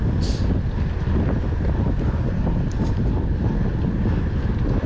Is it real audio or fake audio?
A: real